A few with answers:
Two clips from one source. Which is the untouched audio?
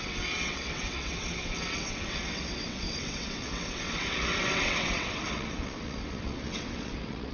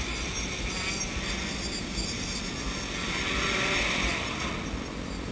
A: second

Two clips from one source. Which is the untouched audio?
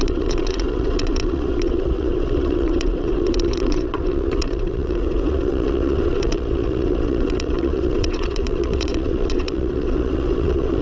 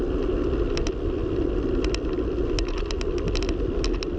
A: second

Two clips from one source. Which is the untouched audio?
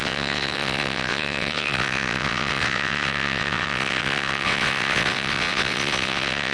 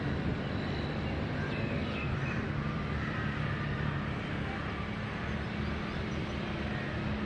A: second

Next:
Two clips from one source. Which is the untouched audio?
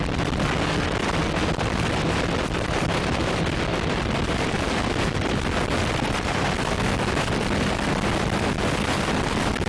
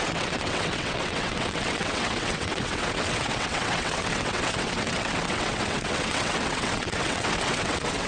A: first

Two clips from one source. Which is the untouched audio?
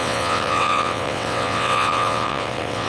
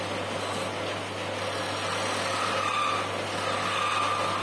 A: second